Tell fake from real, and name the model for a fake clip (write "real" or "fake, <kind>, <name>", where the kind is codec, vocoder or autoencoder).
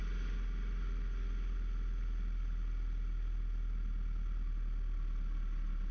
real